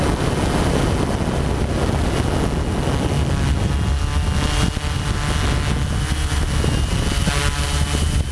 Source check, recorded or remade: recorded